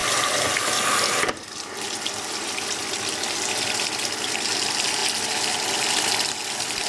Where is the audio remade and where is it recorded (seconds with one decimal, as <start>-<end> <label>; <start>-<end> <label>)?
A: 0.0-6.9 recorded